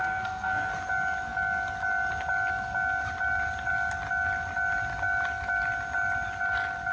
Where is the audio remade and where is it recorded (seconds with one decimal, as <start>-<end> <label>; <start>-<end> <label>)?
0.0-0.7 remade; 0.7-6.9 recorded